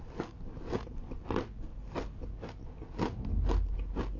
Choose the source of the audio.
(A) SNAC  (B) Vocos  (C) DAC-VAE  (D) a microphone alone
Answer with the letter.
D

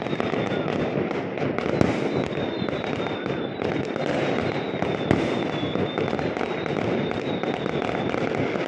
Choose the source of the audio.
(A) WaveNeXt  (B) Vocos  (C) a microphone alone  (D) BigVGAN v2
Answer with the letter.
C